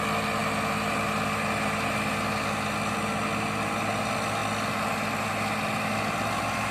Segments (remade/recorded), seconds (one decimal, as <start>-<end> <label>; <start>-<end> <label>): 0.0-6.7 recorded